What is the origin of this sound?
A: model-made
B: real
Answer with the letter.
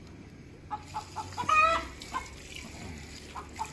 B